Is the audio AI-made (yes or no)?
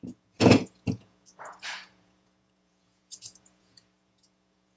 yes